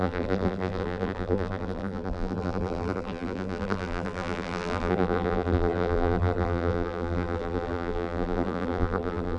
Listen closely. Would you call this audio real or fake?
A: fake